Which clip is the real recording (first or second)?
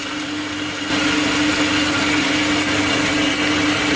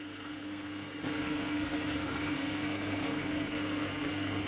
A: first